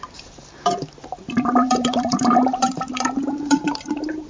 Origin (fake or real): fake